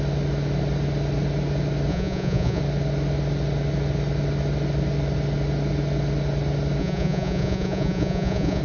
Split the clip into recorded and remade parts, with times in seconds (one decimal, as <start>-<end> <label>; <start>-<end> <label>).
0.0-1.9 recorded; 1.9-2.6 remade; 2.6-6.8 recorded; 6.8-8.6 remade